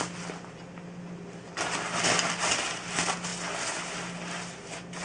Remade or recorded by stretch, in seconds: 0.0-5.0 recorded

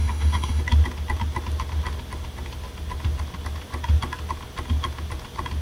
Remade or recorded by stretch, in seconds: 0.0-0.6 remade; 0.6-5.6 recorded